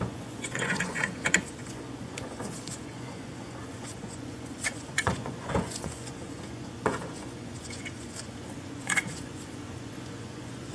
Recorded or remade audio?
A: remade